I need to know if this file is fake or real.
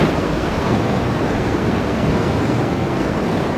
fake